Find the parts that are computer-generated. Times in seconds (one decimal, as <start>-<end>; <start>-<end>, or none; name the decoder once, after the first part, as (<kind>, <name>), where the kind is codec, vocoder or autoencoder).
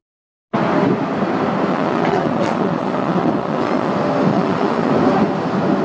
1.7-3.9 (vocoder, Vocos); 4.3-4.9